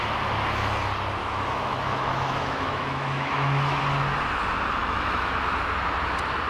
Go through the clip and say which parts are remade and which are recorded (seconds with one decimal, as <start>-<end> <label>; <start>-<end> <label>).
0.0-1.2 recorded; 1.2-3.8 remade; 3.8-4.8 recorded; 4.8-5.4 remade; 5.4-6.5 recorded